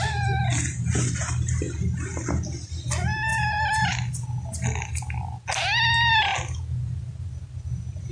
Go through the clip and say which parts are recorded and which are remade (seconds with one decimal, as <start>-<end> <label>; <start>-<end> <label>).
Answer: 0.0-8.1 recorded